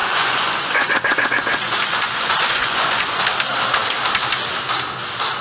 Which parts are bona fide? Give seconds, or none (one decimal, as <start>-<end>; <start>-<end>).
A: 3.2-5.4